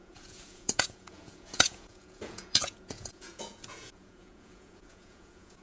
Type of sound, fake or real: fake